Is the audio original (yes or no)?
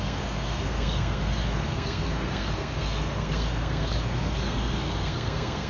no